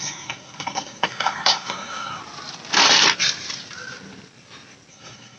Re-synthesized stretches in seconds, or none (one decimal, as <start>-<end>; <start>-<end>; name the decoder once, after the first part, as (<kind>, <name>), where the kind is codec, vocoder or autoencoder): 0.0-2.2 (codec, SNAC); 4.9-5.4

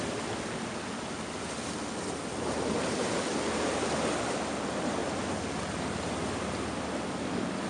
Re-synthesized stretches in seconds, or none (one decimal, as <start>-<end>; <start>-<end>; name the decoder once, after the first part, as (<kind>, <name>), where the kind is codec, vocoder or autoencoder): none